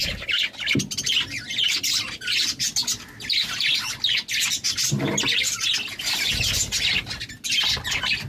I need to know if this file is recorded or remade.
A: recorded